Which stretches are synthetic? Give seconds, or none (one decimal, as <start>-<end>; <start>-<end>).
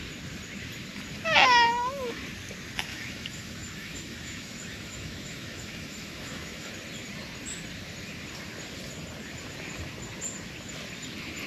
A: 1.7-2.2; 2.9-6.7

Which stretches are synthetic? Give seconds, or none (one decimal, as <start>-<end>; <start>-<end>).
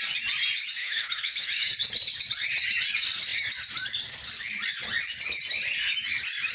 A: 0.8-1.7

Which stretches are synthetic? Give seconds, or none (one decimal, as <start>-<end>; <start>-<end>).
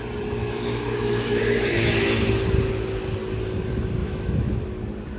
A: 0.4-2.3; 4.0-4.5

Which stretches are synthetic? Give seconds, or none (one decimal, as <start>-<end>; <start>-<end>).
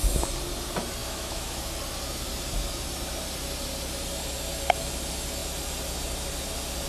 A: 1.0-1.6